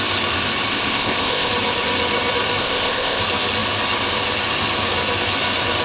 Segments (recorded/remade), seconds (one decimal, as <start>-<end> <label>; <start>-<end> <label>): 0.0-0.7 recorded; 0.7-1.5 remade; 1.5-2.6 recorded; 2.6-3.2 remade; 3.2-5.8 recorded